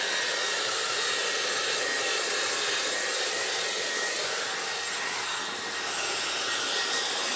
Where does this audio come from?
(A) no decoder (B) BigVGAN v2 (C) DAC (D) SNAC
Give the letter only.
A